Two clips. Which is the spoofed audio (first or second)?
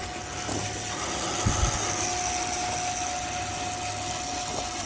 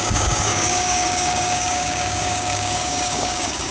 second